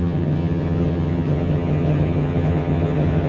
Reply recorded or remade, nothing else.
remade